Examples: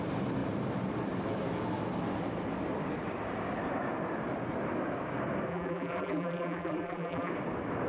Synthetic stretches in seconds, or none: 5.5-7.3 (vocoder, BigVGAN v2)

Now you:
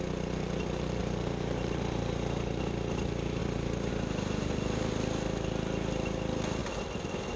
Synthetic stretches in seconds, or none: 1.0-2.6 (vocoder, BigVGAN v2); 3.4-3.9

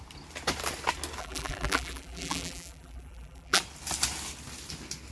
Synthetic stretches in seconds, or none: 1.2-3.6 (vocoder, BigVGAN v2)

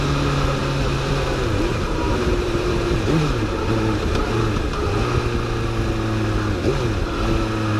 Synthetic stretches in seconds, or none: 1.7-4.2 (vocoder, BigVGAN v2)

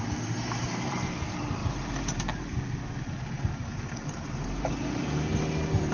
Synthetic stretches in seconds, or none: 1.6-2.6 (vocoder, BigVGAN v2); 3.7-4.7

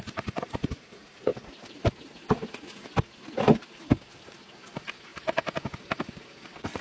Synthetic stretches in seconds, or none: 1.0-3.8 (vocoder, BigVGAN v2)

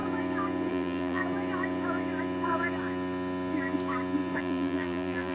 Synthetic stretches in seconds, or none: 0.7-1.2 (vocoder, BigVGAN v2); 4.4-5.3